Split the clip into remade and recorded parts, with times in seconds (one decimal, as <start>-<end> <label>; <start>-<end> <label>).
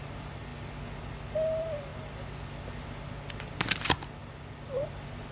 0.0-5.3 recorded